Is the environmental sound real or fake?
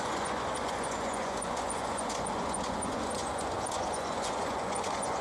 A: fake